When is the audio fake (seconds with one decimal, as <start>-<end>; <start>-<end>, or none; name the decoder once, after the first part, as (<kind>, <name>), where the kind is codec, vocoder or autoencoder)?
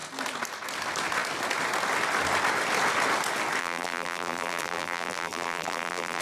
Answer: 3.6-6.2 (vocoder, BigVGAN v2)